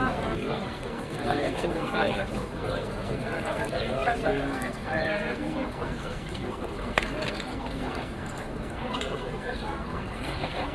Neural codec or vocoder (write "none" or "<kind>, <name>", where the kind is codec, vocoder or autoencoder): codec, SNAC